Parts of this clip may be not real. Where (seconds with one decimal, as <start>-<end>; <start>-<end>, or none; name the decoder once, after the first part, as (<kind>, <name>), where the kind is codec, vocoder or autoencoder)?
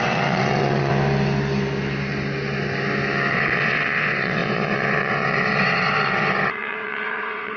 0.0-0.9 (vocoder, WaveNeXt); 3.3-7.6